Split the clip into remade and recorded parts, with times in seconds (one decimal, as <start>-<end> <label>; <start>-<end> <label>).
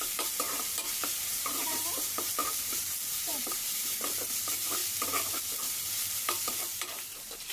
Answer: 0.0-4.8 remade; 4.8-5.4 recorded; 5.4-7.5 remade